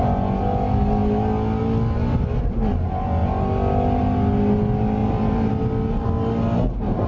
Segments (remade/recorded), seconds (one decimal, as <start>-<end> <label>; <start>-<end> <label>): 0.0-5.0 recorded; 5.0-5.5 remade; 5.5-7.1 recorded